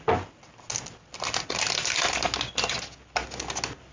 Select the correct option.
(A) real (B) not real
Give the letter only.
A